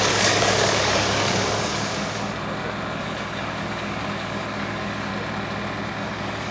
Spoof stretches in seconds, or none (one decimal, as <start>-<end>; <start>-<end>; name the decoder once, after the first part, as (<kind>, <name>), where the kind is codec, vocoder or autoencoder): 0.0-1.9 (codec, DAC); 3.0-5.1; 5.9-6.5